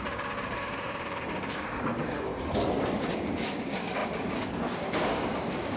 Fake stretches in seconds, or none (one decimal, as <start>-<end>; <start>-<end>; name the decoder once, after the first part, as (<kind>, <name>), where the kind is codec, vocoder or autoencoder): 0.0-2.3 (codec, DAC); 3.0-5.8